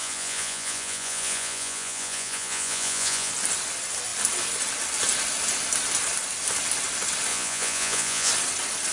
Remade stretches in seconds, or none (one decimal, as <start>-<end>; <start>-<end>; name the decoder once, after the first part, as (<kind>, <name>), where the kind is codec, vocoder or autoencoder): 0.0-3.3 (vocoder, Vocos); 7.3-8.3